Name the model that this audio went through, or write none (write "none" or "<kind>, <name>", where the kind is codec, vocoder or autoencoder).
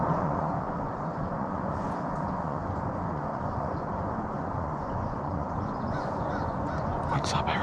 vocoder, Vocos